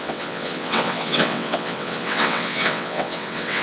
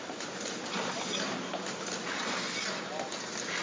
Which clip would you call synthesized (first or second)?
first